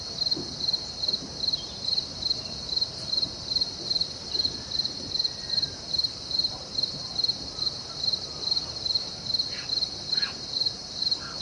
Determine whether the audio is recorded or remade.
remade